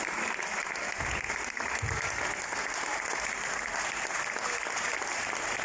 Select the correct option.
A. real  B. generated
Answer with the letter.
A